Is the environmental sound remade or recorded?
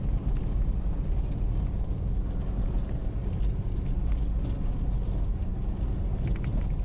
recorded